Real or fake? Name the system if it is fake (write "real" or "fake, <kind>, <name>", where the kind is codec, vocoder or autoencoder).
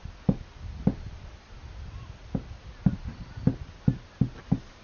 real